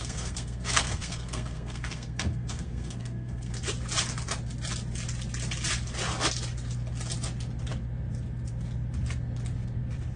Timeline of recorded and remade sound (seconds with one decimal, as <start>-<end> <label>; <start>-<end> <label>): 0.0-3.7 remade; 3.7-10.2 recorded